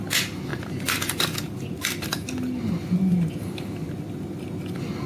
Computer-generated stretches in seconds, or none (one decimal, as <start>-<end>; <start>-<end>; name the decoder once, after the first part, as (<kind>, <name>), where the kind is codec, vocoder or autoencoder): none